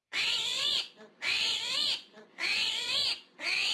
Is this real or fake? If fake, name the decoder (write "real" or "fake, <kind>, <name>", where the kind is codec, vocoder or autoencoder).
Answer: fake, vocoder, Vocos